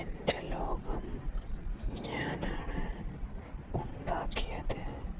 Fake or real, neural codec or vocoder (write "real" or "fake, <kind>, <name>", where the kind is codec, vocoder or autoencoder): real